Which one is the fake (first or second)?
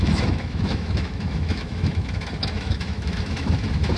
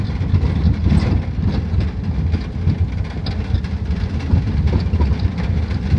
first